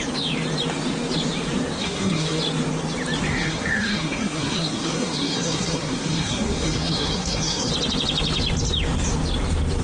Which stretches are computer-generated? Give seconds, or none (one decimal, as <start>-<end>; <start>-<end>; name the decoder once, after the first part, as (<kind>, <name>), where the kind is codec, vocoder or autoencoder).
1.8-2.4 (codec, SNAC); 3.3-7.7